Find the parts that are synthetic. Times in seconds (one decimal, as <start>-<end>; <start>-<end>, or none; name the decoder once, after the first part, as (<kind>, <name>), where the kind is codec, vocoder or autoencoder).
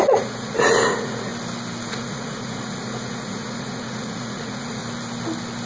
0.0-1.3 (vocoder, Vocos); 1.9-4.8